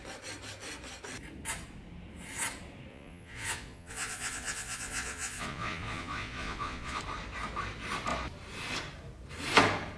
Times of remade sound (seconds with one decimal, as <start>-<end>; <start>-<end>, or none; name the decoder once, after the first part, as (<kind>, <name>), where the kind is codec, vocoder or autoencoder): 2.9-7.0 (vocoder, Vocos)